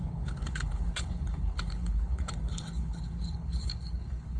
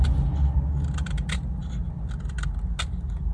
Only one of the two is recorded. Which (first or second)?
second